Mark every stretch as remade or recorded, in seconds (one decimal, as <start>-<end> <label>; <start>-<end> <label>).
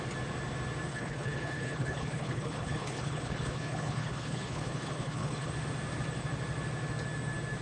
0.0-0.9 recorded; 0.9-5.5 remade; 5.5-7.6 recorded